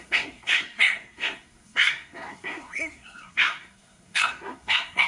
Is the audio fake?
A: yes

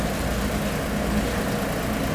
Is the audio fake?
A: no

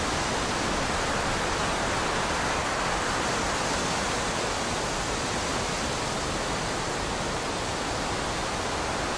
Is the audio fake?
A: no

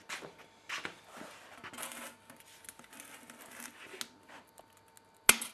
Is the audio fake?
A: no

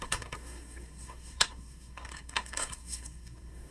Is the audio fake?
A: yes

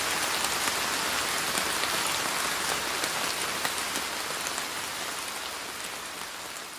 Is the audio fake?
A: no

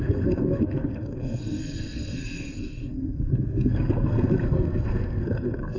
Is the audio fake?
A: yes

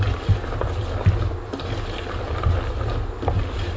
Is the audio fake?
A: no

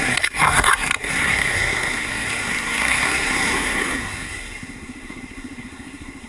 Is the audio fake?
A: yes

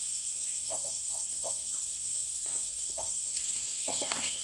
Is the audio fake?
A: yes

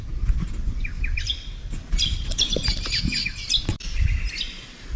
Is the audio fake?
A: no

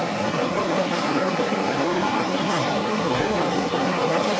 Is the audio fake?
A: yes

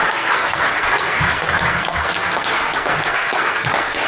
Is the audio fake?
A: yes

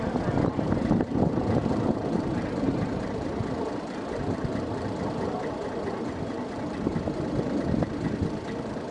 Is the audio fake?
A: no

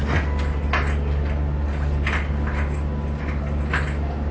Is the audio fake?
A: no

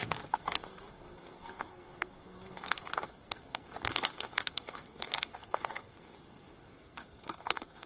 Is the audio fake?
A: yes